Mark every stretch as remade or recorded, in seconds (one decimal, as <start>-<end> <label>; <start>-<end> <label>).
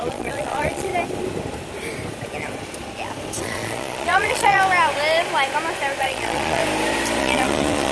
0.0-0.9 remade; 0.9-3.4 recorded; 3.4-4.6 remade; 4.6-6.0 recorded; 6.0-6.6 remade; 6.6-7.2 recorded; 7.2-7.9 remade